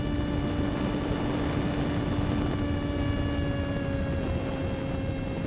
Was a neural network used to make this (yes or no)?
no